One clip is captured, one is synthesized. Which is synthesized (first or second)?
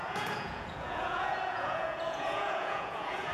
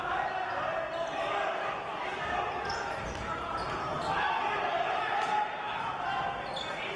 first